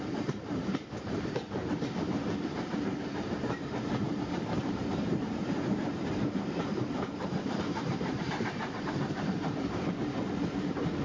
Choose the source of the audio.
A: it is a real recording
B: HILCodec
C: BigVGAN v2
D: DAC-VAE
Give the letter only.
C